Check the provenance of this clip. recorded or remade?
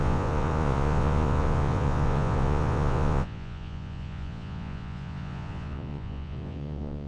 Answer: remade